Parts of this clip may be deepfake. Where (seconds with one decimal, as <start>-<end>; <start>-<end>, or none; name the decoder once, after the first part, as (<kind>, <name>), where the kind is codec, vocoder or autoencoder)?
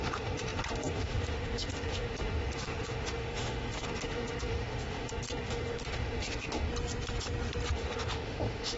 0.0-6.7 (autoencoder, DAC-VAE); 7.7-8.8